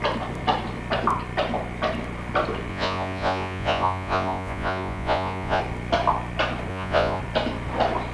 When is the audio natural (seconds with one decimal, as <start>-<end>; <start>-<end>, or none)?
0.0-2.7; 5.6-6.7; 7.2-8.1

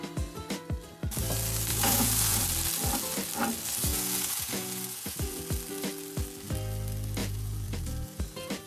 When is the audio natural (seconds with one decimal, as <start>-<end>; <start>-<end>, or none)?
0.0-1.7; 2.4-3.9; 5.4-7.2; 8.2-8.7

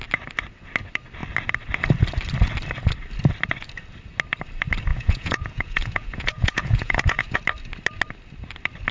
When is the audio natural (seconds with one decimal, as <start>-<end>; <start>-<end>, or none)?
0.0-4.9; 7.4-8.9

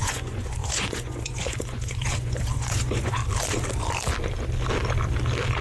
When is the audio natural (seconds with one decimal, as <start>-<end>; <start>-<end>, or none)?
3.2-5.6

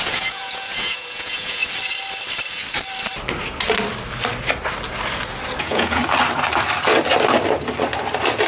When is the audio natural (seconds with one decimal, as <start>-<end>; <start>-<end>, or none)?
1.6-5.6; 6.0-8.5

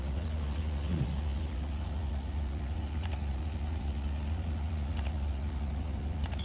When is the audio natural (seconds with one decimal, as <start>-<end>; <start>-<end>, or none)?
none